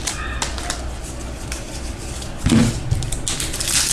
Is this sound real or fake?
real